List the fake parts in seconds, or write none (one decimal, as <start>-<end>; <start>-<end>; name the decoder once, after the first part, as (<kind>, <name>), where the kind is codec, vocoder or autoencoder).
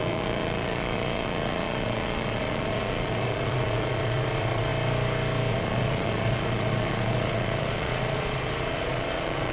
0.0-4.7 (vocoder, Vocos); 5.5-9.5